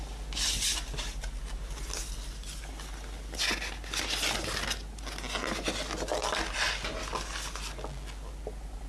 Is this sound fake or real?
real